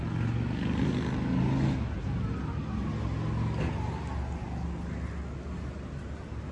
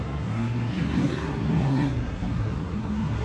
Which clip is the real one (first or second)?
first